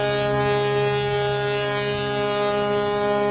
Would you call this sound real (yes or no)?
yes